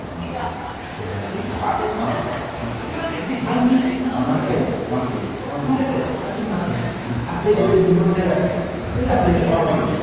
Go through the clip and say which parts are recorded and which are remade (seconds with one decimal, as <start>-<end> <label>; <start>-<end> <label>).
0.0-1.1 recorded; 1.1-1.7 remade; 1.7-2.6 recorded; 2.6-7.5 remade; 7.5-8.4 recorded; 8.4-9.6 remade; 9.6-10.0 recorded

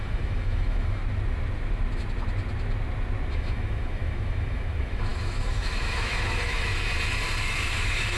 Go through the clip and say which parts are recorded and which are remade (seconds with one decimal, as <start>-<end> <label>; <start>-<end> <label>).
0.0-1.0 remade; 1.0-3.3 recorded; 3.3-6.7 remade; 6.7-7.4 recorded; 7.4-8.2 remade

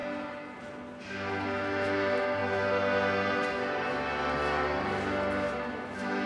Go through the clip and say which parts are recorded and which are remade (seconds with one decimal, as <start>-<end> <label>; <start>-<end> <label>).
0.0-6.3 recorded